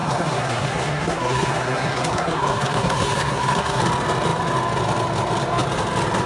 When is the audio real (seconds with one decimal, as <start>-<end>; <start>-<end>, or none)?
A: 3.8-6.3